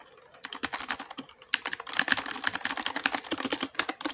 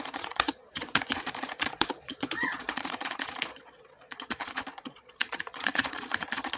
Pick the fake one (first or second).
second